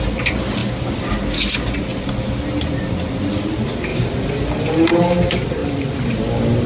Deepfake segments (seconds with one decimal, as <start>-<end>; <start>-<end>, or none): 3.9-4.9